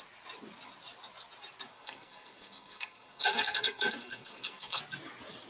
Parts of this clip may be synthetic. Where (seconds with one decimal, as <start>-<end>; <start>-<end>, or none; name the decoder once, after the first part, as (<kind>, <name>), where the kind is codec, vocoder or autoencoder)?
1.7-4.8 (codec, SNAC)